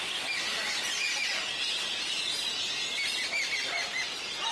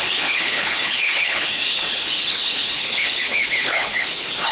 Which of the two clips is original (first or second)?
first